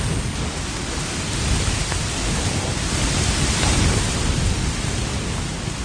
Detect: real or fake real